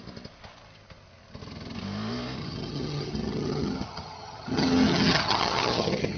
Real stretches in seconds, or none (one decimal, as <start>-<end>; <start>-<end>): 0.0-2.4